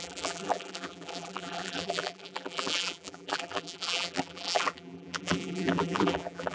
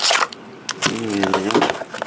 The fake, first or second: first